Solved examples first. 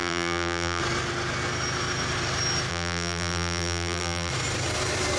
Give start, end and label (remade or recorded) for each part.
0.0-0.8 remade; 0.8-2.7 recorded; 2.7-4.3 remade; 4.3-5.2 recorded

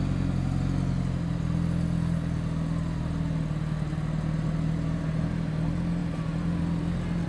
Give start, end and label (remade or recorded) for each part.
0.0-7.3 recorded

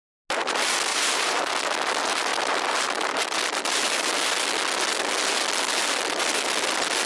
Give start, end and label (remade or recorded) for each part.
0.0-0.9 recorded; 0.9-1.5 remade; 1.5-7.1 recorded